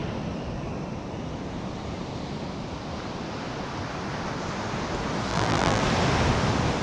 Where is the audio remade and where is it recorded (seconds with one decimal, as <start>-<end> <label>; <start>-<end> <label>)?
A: 0.0-5.3 recorded; 5.3-5.8 remade; 5.8-6.8 recorded